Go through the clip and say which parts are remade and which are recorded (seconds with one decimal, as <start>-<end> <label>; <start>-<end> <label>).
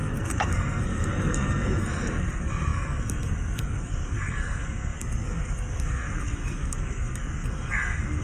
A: 0.0-8.2 remade